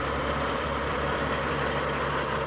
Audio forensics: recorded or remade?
remade